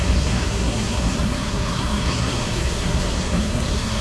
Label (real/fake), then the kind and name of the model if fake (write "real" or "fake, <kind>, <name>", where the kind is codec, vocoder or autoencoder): fake, codec, SNAC